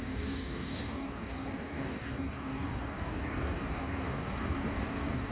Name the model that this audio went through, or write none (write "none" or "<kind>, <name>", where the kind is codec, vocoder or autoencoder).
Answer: codec, DAC